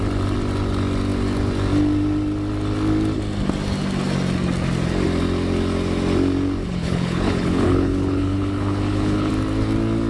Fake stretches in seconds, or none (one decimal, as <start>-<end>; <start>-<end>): 6.6-9.3